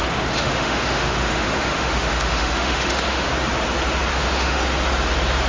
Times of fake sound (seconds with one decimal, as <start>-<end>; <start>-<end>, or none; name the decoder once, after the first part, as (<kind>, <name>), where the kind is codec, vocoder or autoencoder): 0.0-3.3 (autoencoder, DAC-VAE); 4.1-4.6